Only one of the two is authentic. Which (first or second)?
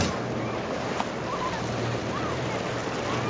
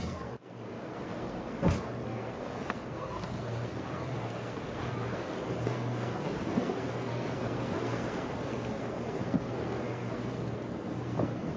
first